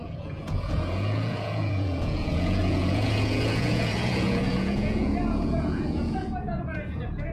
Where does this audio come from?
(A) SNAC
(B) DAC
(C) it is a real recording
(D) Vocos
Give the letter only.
D